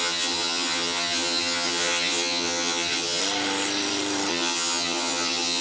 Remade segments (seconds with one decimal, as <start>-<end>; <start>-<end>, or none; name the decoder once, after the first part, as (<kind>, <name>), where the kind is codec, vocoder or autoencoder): 0.0-3.2 (vocoder, HiFi-GAN); 4.3-5.6